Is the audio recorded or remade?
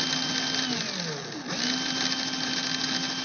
recorded